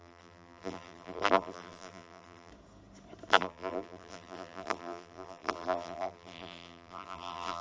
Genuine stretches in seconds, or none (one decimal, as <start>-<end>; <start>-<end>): 2.5-3.3